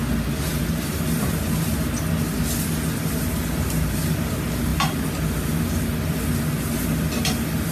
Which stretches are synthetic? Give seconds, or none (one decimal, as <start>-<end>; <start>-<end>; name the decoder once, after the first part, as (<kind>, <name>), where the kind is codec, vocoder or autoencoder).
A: none